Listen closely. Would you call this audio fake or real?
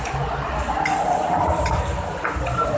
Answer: fake